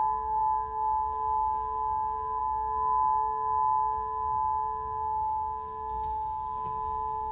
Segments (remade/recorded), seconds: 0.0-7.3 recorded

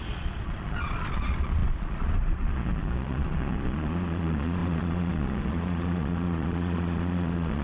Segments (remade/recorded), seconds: 0.0-7.6 remade

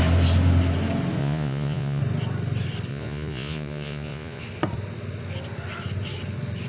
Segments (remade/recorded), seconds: 0.0-1.2 recorded; 1.2-2.0 remade; 2.0-2.9 recorded; 2.9-4.4 remade; 4.4-6.7 recorded

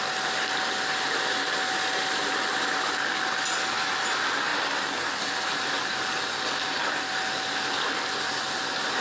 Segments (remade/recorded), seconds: 0.0-9.0 recorded

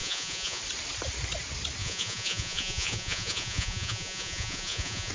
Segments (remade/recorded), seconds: 0.0-0.6 remade; 0.6-1.8 recorded; 1.8-5.1 remade